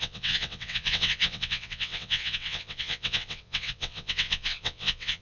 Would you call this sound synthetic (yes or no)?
yes